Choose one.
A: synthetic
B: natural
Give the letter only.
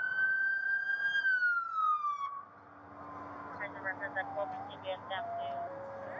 B